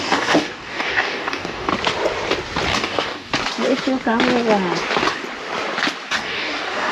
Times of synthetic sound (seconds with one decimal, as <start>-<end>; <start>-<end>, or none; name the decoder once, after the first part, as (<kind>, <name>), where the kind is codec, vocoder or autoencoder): 0.0-1.7 (codec, DAC); 2.7-3.3; 6.1-6.9